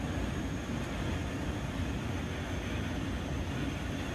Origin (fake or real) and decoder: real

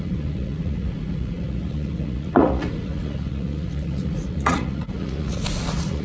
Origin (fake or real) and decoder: fake, vocoder, Vocos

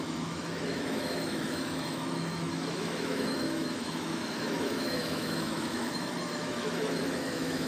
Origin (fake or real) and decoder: fake, autoencoder, DAC-VAE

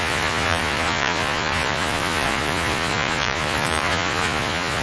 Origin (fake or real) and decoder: fake, vocoder, Vocos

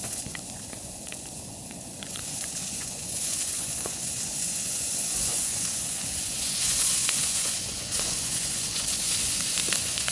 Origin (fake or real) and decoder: fake, vocoder, Vocos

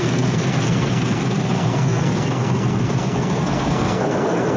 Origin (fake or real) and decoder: fake, codec, SNAC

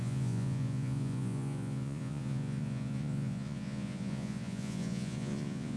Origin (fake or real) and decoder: fake, vocoder, Vocos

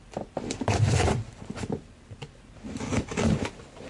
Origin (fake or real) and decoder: fake, vocoder, BigVGAN v2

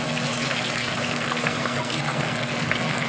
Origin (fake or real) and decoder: fake, codec, SNAC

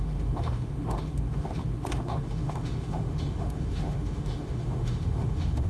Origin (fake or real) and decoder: fake, autoencoder, DAC-VAE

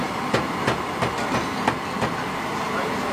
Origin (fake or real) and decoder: real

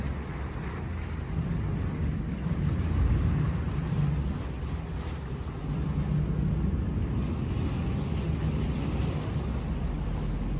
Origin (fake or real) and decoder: real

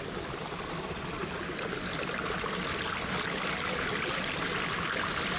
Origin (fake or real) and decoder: real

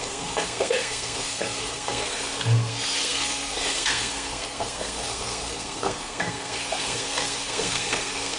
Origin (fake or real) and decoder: fake, codec, SNAC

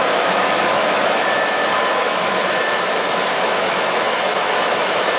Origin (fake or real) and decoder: fake, autoencoder, DAC-VAE